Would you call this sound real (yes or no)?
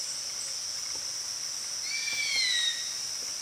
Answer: yes